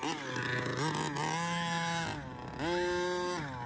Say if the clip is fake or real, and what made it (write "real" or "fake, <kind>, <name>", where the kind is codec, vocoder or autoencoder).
real